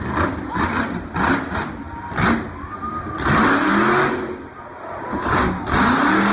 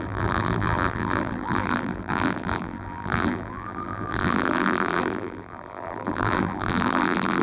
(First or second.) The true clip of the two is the first